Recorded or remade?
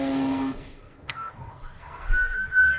remade